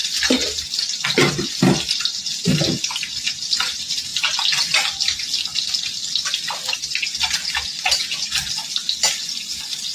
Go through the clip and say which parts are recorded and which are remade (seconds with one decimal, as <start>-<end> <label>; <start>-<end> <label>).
0.0-9.9 recorded